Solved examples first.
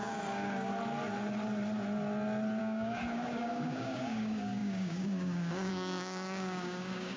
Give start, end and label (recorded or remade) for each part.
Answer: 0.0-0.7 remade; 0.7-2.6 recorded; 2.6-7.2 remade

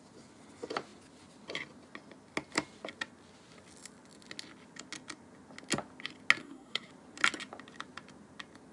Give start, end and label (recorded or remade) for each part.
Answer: 0.0-6.4 recorded; 6.4-6.9 remade; 6.9-8.7 recorded

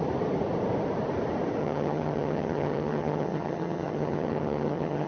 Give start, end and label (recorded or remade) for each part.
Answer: 0.0-1.6 recorded; 1.6-5.1 remade

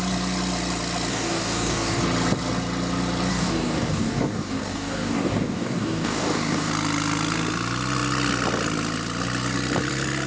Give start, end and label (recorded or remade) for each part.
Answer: 0.0-1.1 recorded; 1.1-2.0 remade; 2.0-3.3 recorded; 3.3-6.7 remade; 6.7-10.3 recorded

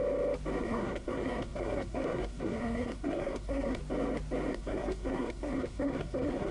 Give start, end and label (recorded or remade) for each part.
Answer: 0.0-0.6 recorded; 0.6-3.8 remade; 3.8-4.5 recorded; 4.5-6.5 remade

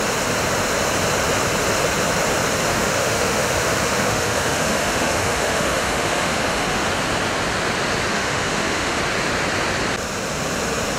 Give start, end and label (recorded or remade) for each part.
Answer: 0.0-2.7 recorded; 2.7-6.9 remade; 6.9-8.1 recorded; 8.1-9.0 remade; 9.0-11.0 recorded